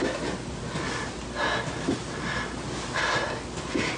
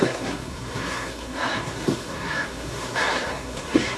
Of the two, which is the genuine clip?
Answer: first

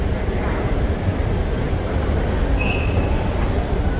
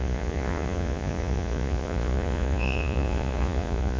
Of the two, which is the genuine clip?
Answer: first